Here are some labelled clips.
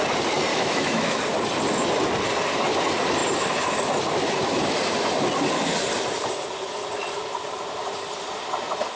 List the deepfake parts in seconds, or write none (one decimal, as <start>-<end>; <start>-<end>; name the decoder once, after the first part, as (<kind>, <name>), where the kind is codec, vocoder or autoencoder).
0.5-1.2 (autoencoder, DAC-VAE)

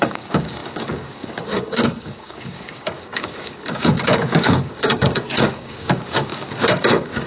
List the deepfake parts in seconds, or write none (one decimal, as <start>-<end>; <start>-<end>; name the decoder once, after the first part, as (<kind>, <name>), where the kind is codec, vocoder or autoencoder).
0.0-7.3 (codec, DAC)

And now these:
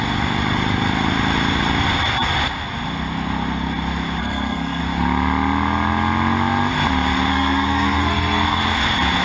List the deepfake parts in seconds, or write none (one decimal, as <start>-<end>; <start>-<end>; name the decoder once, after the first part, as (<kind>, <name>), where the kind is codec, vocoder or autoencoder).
4.2-4.8 (codec, SNAC); 7.3-8.6

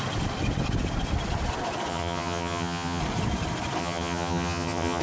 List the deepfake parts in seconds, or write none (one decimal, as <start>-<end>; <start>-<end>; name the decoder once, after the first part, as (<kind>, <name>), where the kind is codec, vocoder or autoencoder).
1.9-3.0 (vocoder, HiFi-GAN); 3.8-5.0

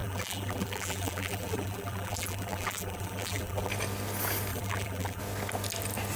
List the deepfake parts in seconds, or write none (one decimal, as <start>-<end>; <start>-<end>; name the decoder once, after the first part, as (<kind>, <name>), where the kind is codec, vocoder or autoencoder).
0.0-3.7 (vocoder, BigVGAN v2); 4.5-5.2

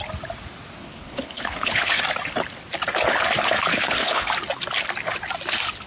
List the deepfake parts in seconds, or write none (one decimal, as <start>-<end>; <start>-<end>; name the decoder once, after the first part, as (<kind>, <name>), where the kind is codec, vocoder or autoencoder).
0.8-2.0 (codec, HILCodec); 3.7-4.3